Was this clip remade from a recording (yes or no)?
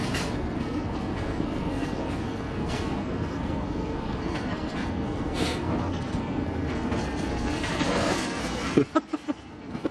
yes